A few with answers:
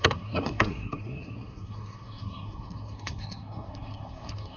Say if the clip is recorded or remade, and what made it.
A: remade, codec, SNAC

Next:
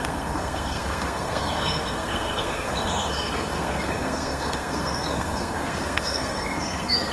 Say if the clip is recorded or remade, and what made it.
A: remade, codec, SNAC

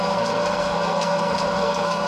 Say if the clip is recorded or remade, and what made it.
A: remade, codec, SNAC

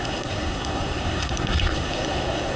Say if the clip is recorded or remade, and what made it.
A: remade, codec, SNAC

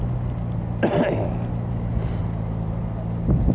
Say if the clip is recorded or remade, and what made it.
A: recorded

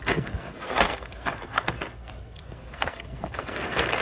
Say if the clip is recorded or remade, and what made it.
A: remade, codec, SNAC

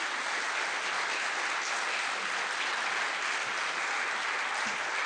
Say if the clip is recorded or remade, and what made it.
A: recorded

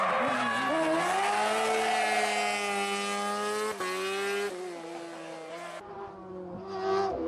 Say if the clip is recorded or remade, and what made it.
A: recorded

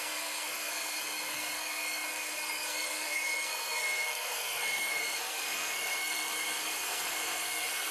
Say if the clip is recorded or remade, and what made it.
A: remade, codec, SNAC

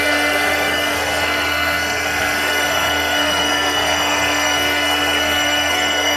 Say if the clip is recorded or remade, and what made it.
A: remade, codec, SNAC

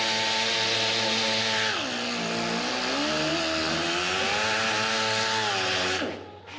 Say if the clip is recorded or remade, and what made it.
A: recorded